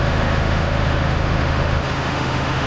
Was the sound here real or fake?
fake